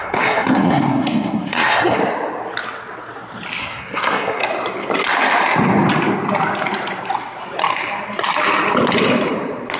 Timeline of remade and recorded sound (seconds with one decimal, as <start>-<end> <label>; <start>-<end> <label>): 0.0-2.0 remade; 2.0-3.6 recorded; 3.6-4.4 remade; 4.4-9.8 recorded